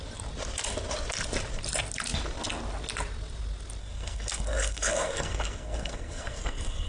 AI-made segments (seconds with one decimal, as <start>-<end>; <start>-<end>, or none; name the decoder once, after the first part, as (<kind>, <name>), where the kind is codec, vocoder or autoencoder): 3.8-6.9 (codec, SNAC)